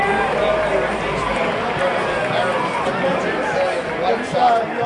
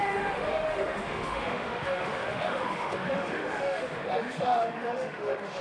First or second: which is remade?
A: second